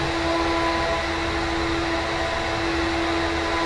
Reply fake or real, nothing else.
real